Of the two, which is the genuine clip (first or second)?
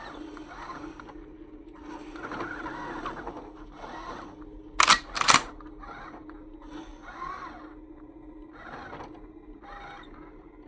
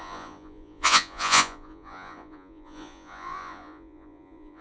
first